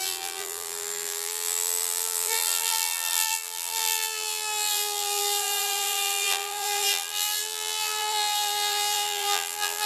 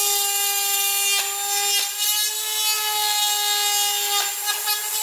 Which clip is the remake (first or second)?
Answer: first